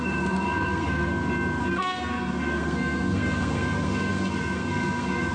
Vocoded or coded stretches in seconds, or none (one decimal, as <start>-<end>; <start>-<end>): 0.0-1.1; 1.6-5.3

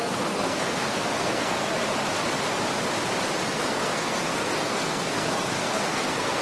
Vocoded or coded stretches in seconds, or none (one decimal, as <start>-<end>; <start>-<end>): 0.0-1.7; 3.5-6.4